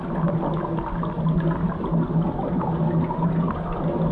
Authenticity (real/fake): real